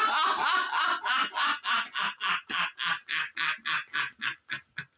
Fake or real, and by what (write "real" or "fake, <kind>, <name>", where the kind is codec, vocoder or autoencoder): real